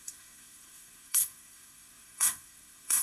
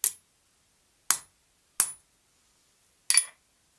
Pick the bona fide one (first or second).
second